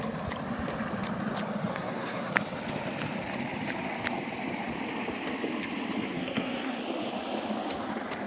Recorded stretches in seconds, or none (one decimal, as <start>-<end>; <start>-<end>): 0.0-1.7; 2.3-6.1; 6.8-8.3